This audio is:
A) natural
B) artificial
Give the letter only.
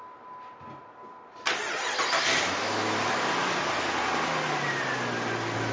A